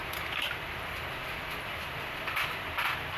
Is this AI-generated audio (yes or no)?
yes